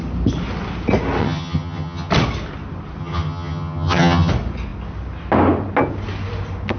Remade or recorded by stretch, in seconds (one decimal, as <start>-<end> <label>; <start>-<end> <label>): 0.0-1.2 recorded; 1.2-2.1 remade; 2.1-3.0 recorded; 3.0-4.3 remade; 4.3-6.8 recorded